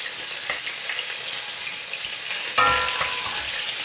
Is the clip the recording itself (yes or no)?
yes